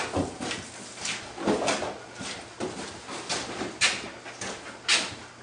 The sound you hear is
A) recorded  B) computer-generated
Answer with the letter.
A